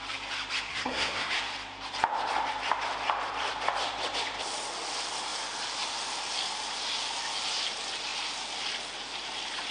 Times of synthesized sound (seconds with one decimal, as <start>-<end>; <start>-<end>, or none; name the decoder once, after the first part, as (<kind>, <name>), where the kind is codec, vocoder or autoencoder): 0.7-1.4 (codec, SNAC)

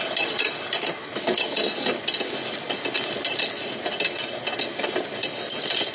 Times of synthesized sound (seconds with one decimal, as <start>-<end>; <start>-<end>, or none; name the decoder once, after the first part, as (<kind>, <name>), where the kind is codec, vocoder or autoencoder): none

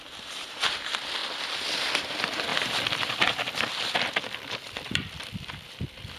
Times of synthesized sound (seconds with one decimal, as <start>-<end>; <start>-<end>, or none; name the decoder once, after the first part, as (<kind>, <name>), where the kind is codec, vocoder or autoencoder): 0.0-1.2 (vocoder, BigVGAN v2); 2.0-2.5

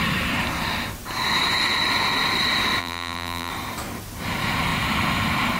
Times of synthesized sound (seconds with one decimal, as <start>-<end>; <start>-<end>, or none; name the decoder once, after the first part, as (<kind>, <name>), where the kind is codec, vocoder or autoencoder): 2.8-3.5 (vocoder, BigVGAN v2)

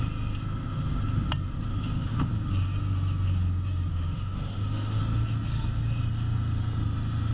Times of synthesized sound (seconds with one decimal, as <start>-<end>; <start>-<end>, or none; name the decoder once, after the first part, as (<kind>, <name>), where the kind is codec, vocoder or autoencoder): 1.7-2.3 (autoencoder, DAC-VAE); 3.9-5.0

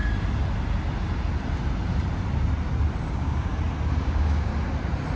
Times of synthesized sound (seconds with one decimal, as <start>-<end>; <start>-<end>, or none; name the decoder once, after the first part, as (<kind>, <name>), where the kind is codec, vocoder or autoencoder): 3.1-3.5 (codec, DAC); 4.0-4.5

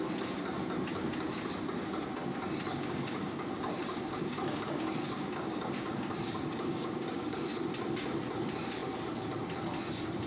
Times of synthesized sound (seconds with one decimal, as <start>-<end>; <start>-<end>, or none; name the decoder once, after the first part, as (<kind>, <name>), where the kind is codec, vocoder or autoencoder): 0.9-1.5 (codec, DAC); 2.7-7.4